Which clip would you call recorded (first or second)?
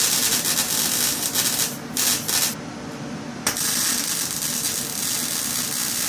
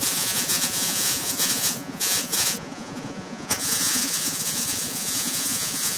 first